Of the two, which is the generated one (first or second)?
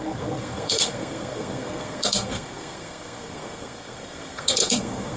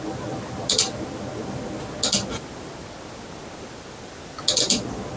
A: first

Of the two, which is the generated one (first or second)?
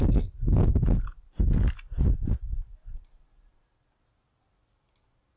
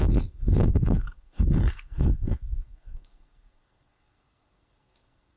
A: second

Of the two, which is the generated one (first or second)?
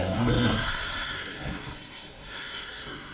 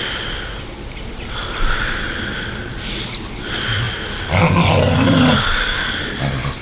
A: first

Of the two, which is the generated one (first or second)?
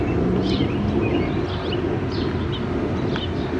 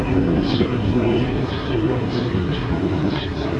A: second